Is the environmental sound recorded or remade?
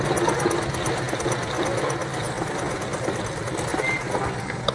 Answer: recorded